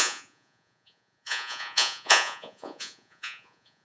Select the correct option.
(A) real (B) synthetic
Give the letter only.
B